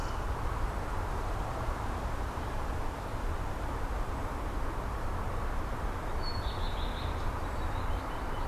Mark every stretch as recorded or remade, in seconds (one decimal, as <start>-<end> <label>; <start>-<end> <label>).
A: 0.0-0.8 recorded; 0.8-8.5 remade